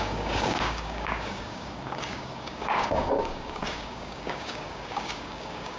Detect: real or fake fake